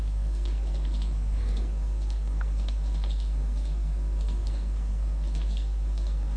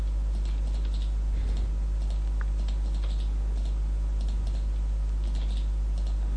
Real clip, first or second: second